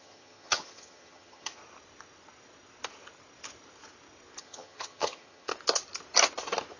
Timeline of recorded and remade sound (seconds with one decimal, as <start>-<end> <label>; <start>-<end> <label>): 0.0-1.6 remade; 1.6-4.4 recorded; 4.4-5.5 remade; 5.5-6.8 recorded